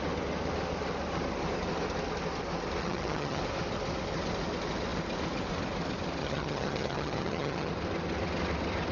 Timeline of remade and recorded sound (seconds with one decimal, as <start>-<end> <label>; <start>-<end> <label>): 0.0-2.8 recorded; 2.8-3.4 remade; 3.4-6.2 recorded; 6.2-7.7 remade; 7.7-8.9 recorded

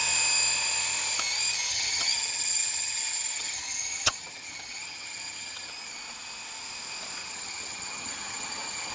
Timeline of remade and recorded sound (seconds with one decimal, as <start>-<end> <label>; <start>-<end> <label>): 0.0-1.7 recorded; 1.7-5.7 remade; 5.7-7.2 recorded; 7.2-8.9 remade

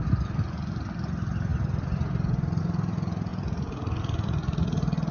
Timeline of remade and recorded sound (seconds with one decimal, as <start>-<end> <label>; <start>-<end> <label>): 0.0-5.1 recorded

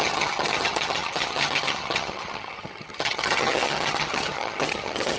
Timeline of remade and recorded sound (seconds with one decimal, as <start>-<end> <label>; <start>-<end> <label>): 0.0-5.2 remade

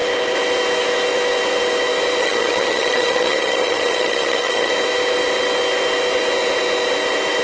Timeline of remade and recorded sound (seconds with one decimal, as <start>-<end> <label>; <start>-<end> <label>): 0.0-2.2 recorded; 2.2-4.7 remade; 4.7-7.4 recorded

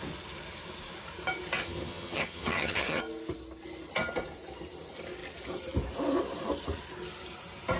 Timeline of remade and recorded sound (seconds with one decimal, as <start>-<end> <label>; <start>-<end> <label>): 0.0-1.6 recorded; 1.6-3.0 remade; 3.0-7.8 recorded

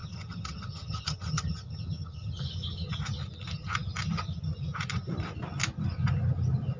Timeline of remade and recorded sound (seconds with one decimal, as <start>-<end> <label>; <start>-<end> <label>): 0.0-2.4 remade; 2.4-6.8 recorded

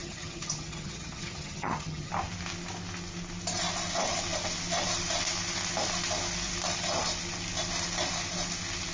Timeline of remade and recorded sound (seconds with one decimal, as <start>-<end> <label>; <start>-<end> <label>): 0.0-2.1 remade; 2.1-8.9 recorded